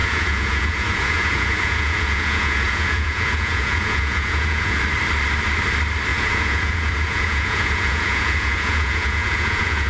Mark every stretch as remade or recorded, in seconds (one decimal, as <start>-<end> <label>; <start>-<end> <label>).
0.0-4.8 remade; 4.8-6.1 recorded; 6.1-9.9 remade